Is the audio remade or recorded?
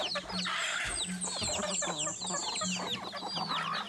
recorded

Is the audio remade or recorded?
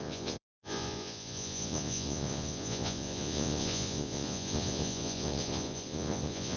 remade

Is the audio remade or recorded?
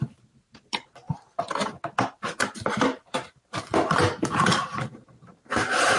remade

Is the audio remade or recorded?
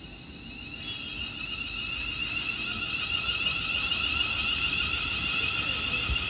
recorded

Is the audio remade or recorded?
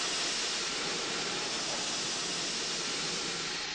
recorded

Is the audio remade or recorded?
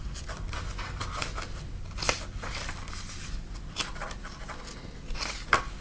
recorded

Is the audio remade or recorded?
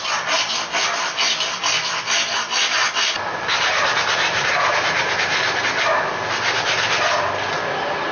recorded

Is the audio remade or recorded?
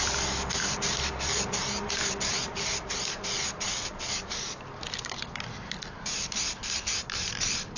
remade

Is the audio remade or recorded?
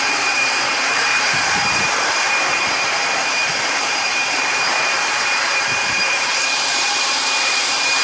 remade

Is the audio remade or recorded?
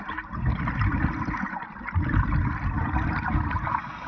recorded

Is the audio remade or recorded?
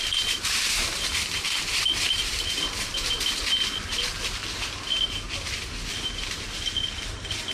recorded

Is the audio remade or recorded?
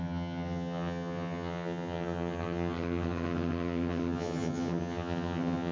remade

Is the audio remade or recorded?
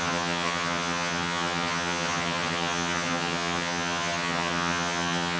remade